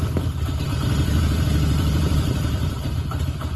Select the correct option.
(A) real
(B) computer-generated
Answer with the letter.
B